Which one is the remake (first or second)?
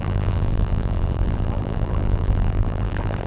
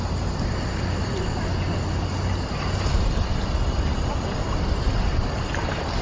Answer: first